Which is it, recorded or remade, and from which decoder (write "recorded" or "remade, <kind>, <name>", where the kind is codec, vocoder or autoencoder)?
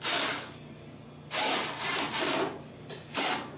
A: recorded